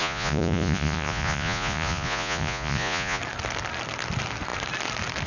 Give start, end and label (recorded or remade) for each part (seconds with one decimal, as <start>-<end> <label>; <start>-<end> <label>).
0.0-3.2 remade; 3.2-5.3 recorded